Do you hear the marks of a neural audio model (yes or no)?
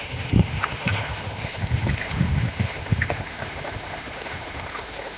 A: yes